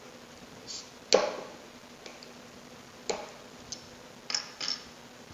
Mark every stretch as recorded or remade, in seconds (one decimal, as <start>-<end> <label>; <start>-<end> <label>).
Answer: 0.0-5.3 recorded